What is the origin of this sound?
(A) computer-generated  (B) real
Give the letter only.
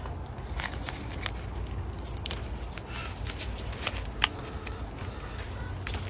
B